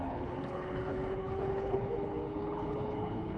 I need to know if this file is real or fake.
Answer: fake